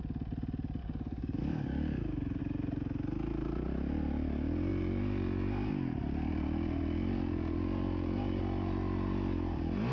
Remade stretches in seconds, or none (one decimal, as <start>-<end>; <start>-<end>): 0.8-2.4